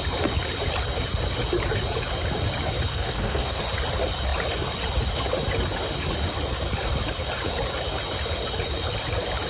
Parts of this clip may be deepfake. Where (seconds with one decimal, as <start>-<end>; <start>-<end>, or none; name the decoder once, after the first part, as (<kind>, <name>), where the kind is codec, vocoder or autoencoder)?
2.9-3.6 (codec, SNAC)